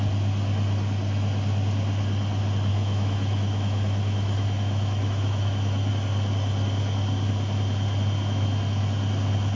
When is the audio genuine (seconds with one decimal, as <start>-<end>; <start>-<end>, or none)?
0.0-2.7; 5.9-9.6